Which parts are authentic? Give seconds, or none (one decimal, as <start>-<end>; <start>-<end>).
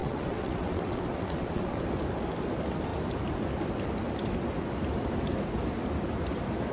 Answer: 1.8-6.7